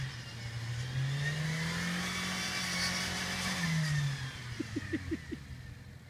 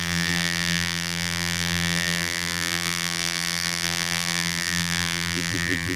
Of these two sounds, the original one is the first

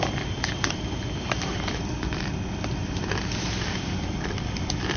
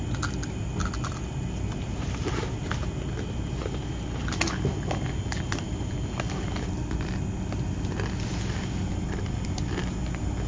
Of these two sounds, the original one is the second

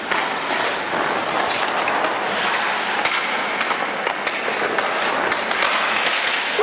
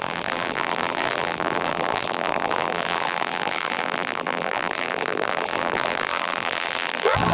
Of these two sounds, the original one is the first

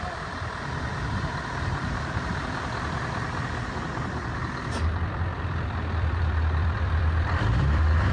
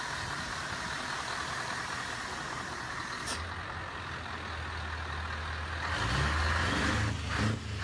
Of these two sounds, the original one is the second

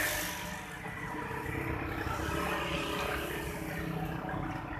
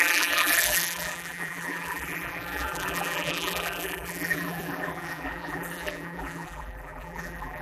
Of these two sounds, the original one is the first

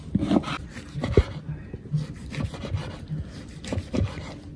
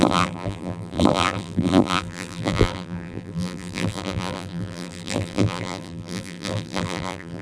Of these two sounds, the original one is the first